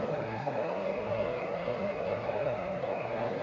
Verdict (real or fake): fake